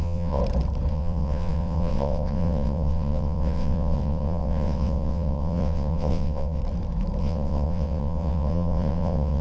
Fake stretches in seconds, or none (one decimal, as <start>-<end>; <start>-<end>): 0.0-0.4; 0.9-6.6; 7.2-9.4